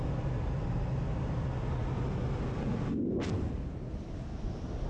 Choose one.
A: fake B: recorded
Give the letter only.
B